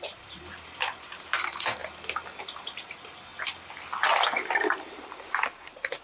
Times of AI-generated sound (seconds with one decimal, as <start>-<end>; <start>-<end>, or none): 0.0-1.8; 2.4-3.3; 4.8-6.0